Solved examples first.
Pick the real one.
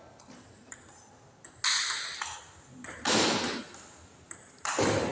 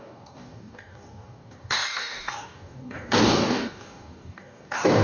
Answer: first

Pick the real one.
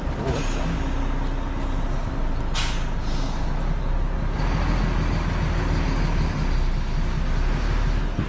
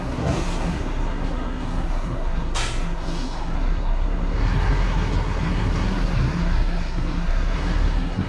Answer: first